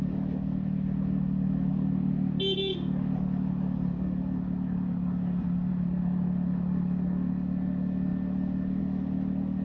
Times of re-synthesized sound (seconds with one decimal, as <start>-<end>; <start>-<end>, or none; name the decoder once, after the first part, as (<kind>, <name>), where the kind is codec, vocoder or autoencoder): none

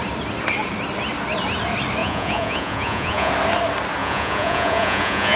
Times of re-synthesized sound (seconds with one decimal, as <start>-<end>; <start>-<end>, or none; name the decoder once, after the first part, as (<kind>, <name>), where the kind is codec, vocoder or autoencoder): 2.0-3.3 (vocoder, Vocos); 4.0-5.4

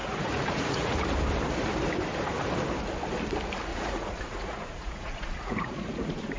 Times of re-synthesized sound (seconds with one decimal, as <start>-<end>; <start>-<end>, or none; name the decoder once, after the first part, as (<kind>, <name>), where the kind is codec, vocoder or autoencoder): 0.0-1.0 (vocoder, Vocos); 3.7-6.4

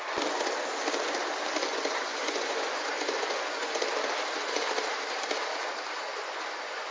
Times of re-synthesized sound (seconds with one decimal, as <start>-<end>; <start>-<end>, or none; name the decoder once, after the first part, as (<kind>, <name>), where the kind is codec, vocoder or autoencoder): 1.7-3.8 (vocoder, Vocos); 6.1-6.9

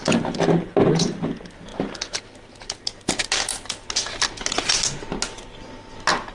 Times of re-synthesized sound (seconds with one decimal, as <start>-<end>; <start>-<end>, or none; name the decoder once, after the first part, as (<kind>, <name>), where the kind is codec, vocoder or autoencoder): none

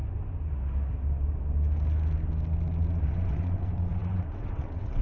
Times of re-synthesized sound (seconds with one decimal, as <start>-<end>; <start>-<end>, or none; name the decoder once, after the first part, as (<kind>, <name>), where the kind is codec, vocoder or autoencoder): 3.0-5.0 (vocoder, WaveNeXt)

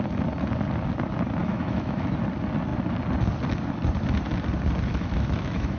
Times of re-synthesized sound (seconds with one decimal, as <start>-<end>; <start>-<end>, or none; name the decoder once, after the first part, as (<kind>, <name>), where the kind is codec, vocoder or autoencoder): 1.4-2.1 (autoencoder, DAC-VAE); 4.9-5.8

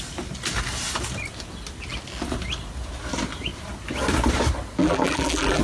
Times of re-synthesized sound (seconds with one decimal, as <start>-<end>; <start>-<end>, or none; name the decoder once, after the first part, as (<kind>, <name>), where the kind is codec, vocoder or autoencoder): 4.8-5.6 (vocoder, BigVGAN v2)